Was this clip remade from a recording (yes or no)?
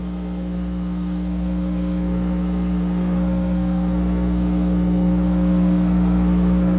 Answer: yes